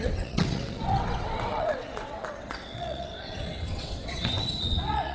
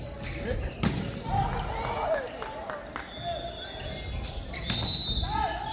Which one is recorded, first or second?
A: second